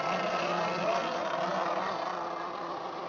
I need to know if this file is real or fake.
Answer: real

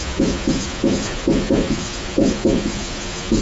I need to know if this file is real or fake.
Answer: fake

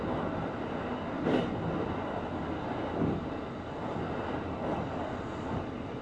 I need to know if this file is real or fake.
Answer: real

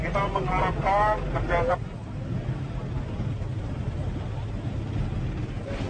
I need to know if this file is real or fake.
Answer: real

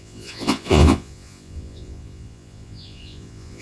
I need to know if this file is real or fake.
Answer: fake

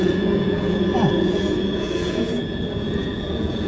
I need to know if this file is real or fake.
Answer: fake